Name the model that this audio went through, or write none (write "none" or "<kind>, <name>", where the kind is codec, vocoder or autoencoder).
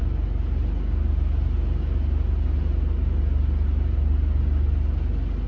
none